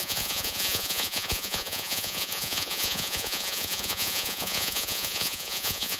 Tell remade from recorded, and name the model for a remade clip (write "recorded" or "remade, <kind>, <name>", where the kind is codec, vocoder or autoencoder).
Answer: remade, vocoder, Vocos